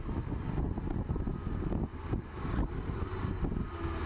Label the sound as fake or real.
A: real